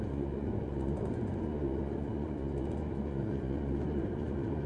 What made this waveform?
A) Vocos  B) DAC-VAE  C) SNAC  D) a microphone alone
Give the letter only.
A